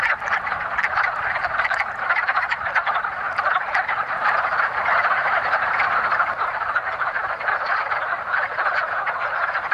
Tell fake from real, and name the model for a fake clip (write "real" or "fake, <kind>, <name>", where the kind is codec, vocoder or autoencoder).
real